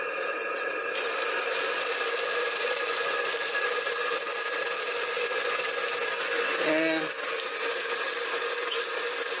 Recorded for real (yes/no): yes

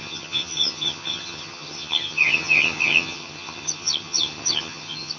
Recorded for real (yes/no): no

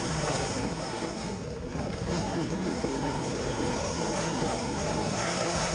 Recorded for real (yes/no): no